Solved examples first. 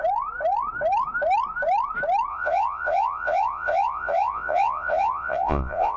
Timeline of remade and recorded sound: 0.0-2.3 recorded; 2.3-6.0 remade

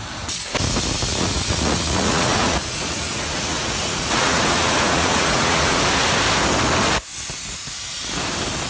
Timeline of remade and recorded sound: 0.0-1.1 recorded; 1.1-5.8 remade; 5.8-8.7 recorded

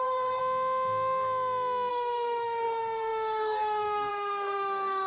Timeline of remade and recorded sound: 0.0-0.4 remade; 0.4-1.9 recorded; 1.9-5.1 remade